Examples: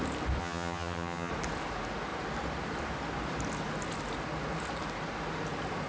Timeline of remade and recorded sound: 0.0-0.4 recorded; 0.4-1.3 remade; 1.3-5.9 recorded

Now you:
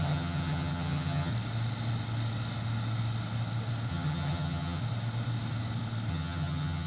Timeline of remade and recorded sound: 0.0-1.3 remade; 1.3-3.9 recorded; 3.9-4.8 remade; 4.8-6.1 recorded; 6.1-6.9 remade

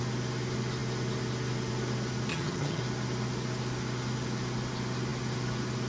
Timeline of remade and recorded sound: 0.0-2.3 recorded; 2.3-2.8 remade; 2.8-5.9 recorded

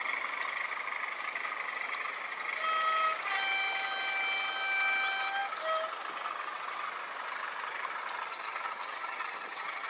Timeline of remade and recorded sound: 0.0-8.3 recorded; 8.3-9.9 remade

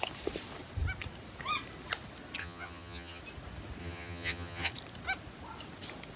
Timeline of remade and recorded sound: 0.0-2.4 recorded; 2.4-3.2 remade; 3.2-3.8 recorded; 3.8-4.7 remade; 4.7-6.2 recorded

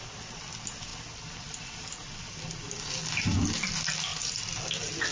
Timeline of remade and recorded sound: 0.0-5.1 recorded

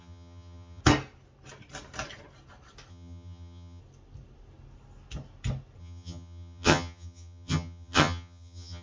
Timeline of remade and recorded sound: 0.0-0.8 remade; 0.8-2.9 recorded; 2.9-3.8 remade; 3.8-5.8 recorded; 5.8-8.8 remade

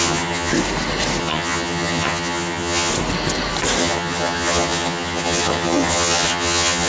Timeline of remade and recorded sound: 0.0-0.5 remade; 0.5-1.2 recorded; 1.2-2.9 remade; 2.9-3.8 recorded; 3.8-6.9 remade